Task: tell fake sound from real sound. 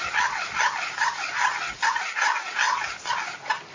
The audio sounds real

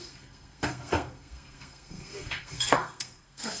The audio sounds fake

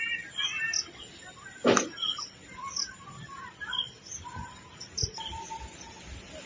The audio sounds real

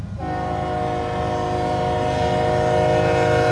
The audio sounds real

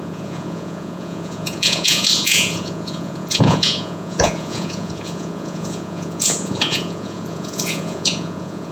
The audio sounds fake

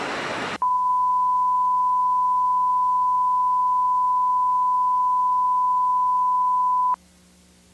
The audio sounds real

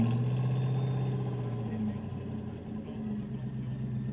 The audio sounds real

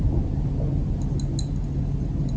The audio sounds real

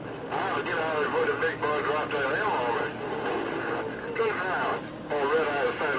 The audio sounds real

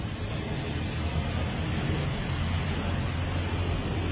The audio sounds real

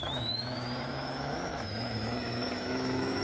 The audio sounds fake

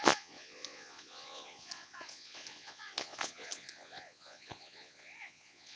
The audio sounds fake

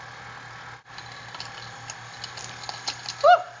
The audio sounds real